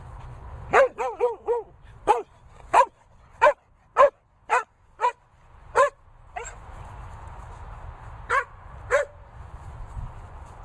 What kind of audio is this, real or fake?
fake